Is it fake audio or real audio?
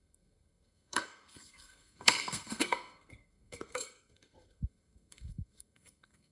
fake